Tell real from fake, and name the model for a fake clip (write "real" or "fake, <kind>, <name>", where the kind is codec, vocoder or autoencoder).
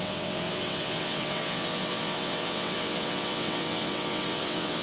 fake, vocoder, WaveNeXt